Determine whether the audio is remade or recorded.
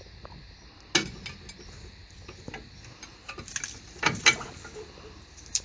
recorded